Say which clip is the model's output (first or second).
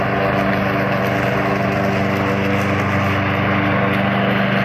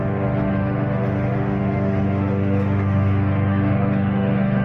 second